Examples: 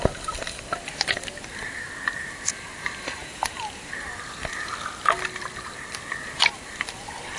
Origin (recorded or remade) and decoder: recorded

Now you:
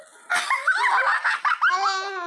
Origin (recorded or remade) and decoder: recorded